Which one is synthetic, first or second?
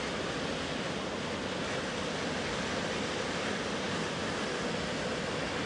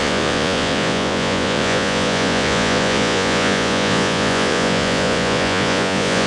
second